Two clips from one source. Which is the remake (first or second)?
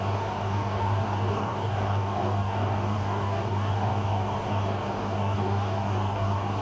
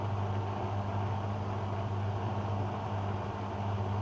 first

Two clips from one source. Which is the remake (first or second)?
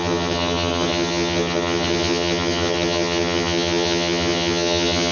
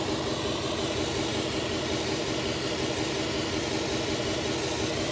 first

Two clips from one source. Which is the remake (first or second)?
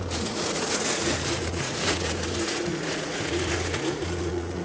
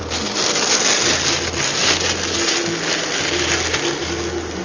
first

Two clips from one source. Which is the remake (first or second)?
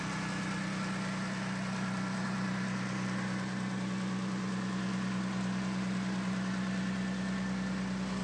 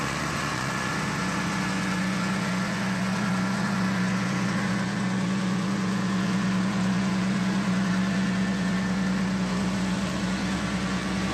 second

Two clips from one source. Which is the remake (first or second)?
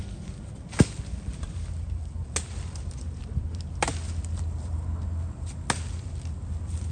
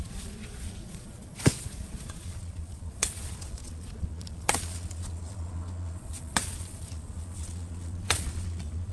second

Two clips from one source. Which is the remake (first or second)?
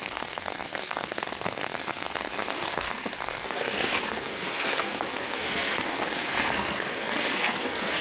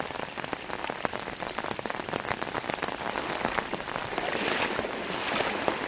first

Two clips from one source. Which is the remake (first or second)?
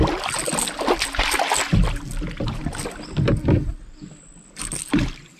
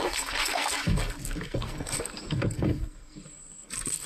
second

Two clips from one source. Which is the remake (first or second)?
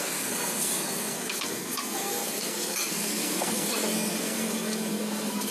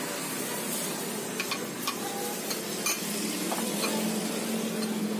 first